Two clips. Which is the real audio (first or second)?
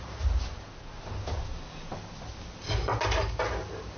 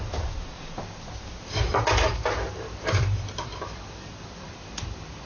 first